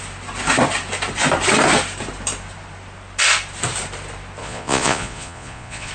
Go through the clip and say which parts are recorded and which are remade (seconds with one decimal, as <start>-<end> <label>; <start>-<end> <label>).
0.0-4.4 recorded; 4.4-5.9 remade